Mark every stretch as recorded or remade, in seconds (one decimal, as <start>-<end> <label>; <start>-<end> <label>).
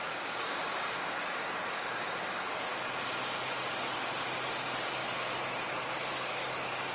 0.0-2.7 remade; 2.7-4.6 recorded; 4.6-5.0 remade; 5.0-5.8 recorded; 5.8-6.9 remade